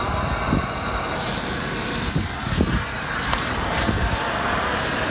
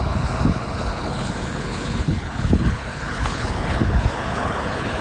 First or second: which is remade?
second